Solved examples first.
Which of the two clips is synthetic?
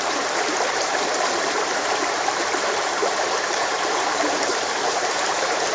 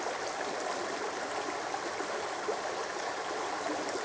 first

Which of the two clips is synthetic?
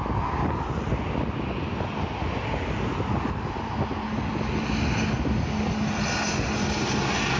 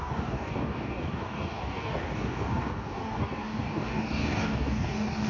second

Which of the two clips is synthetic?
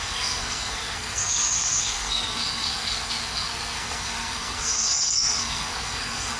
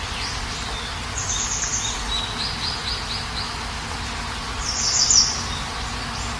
first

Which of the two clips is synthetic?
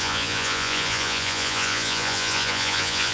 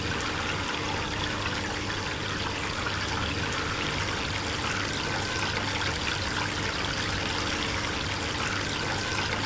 first